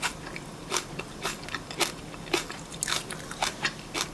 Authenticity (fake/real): real